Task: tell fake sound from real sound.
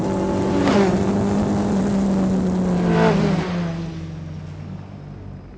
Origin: real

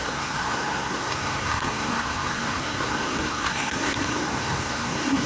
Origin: fake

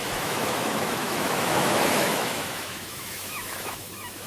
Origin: fake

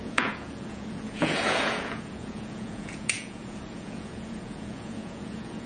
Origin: fake